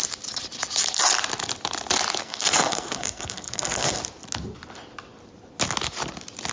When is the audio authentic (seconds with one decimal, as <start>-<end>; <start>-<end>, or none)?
0.0-2.2; 4.0-6.5